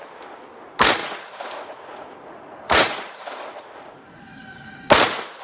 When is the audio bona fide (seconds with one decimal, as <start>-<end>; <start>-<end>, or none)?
0.0-1.0; 4.2-5.4